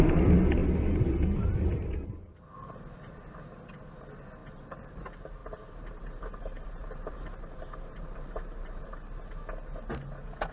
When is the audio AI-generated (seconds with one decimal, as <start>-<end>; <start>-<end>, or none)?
0.6-2.7; 4.4-5.0; 5.4-8.9